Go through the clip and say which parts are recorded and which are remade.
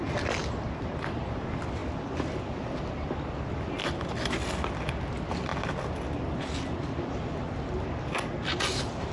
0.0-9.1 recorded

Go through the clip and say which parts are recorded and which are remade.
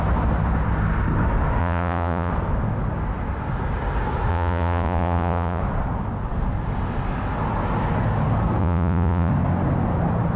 0.0-1.6 recorded; 1.6-2.3 remade; 2.3-4.3 recorded; 4.3-5.6 remade; 5.6-8.6 recorded; 8.6-9.3 remade; 9.3-10.4 recorded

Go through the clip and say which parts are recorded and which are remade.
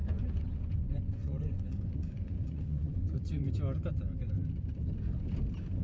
0.0-3.5 remade; 3.5-5.8 recorded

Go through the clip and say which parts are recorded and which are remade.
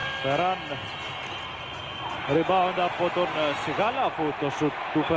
0.0-5.2 recorded